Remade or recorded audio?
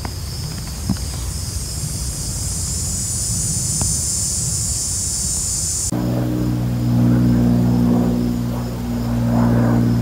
recorded